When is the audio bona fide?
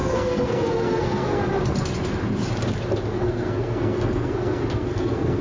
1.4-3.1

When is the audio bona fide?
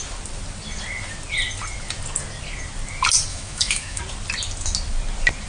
0.0-3.3; 4.0-5.5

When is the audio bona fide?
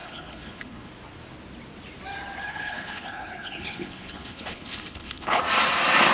0.9-2.5; 5.4-6.1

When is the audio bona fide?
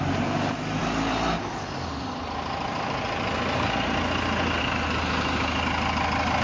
0.0-6.4